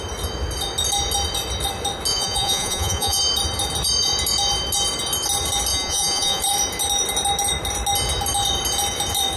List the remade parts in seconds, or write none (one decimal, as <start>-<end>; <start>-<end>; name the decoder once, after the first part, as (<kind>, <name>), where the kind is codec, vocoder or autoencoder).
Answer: 2.1-3.2 (vocoder, Vocos); 5.7-6.4